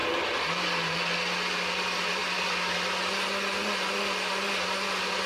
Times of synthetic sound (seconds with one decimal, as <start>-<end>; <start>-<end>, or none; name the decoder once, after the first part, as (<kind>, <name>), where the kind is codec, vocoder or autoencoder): none